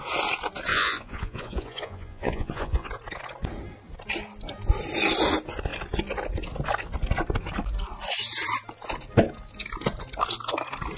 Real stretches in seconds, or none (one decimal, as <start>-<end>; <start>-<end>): 0.0-0.7; 2.9-11.0